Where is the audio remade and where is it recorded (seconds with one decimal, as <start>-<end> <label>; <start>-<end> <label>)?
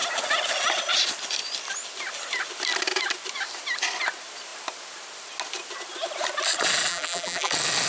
0.0-6.9 recorded; 6.9-7.5 remade; 7.5-7.9 recorded